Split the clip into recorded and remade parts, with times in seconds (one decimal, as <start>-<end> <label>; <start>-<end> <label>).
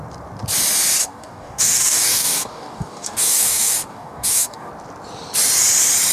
0.0-1.0 recorded; 1.0-4.7 remade; 4.7-6.1 recorded